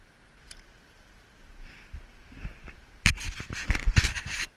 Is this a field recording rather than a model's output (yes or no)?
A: no